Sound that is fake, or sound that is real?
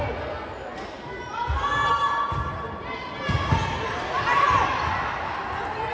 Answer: real